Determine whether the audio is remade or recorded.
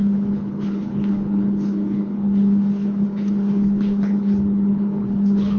remade